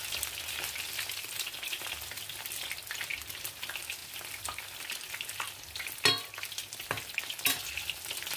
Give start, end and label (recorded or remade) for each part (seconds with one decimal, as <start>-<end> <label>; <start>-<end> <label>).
0.0-8.4 recorded